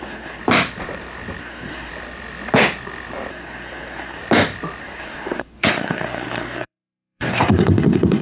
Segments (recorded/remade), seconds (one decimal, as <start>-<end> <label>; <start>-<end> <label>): 0.0-0.4 remade; 0.4-1.4 recorded; 1.4-1.9 remade; 1.9-3.3 recorded; 3.3-4.2 remade; 4.2-4.8 recorded; 4.8-8.2 remade